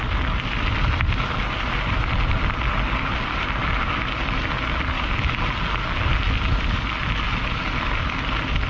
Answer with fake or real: real